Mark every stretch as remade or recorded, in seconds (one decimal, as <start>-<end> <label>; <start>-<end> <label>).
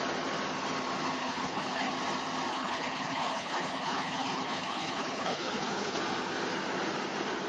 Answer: 0.0-1.2 recorded; 1.2-1.9 remade; 1.9-2.5 recorded; 2.5-6.0 remade; 6.0-7.5 recorded